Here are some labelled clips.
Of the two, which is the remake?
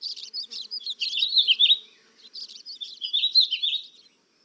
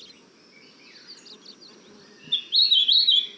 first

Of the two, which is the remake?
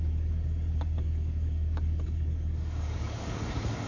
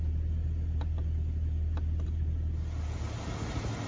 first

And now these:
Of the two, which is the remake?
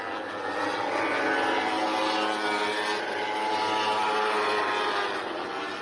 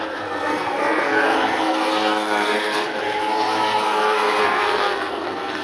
second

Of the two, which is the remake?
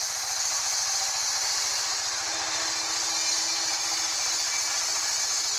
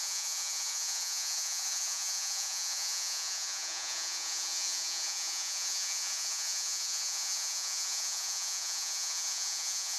second